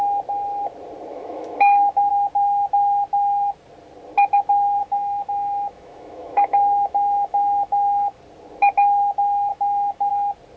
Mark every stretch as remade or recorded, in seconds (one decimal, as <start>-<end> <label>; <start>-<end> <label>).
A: 0.0-1.1 recorded; 1.1-2.1 remade; 2.1-4.8 recorded; 4.8-8.2 remade; 8.2-9.5 recorded; 9.5-10.1 remade; 10.1-10.6 recorded